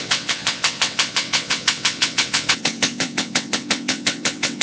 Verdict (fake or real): fake